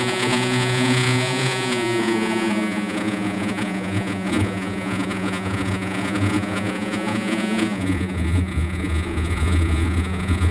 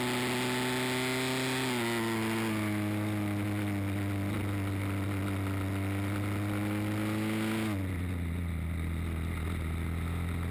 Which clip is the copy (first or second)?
first